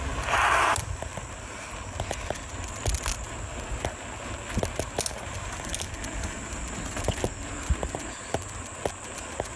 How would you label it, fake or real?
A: real